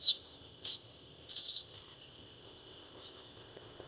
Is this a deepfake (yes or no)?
yes